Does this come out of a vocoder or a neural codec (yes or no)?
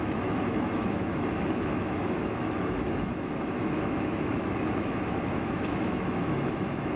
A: yes